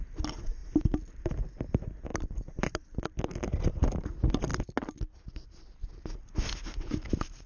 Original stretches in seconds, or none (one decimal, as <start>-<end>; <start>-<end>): 0.0-7.5